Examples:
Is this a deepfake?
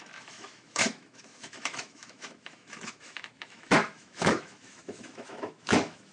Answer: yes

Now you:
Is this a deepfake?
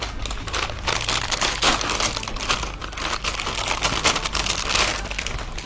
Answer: no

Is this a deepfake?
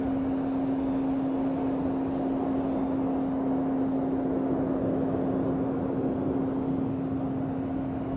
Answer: no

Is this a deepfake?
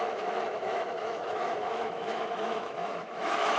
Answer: yes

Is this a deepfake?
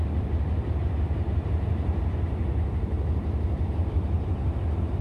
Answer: no